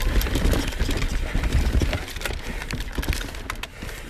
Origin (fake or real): real